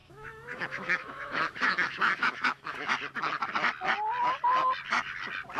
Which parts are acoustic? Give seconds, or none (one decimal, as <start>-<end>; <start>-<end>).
2.9-5.6